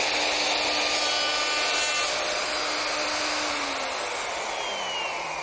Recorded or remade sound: recorded